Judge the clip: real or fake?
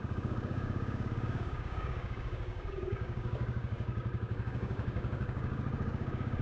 fake